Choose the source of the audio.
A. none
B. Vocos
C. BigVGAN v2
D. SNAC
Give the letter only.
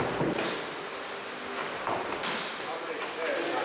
A